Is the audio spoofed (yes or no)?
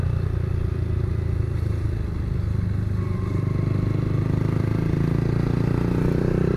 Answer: no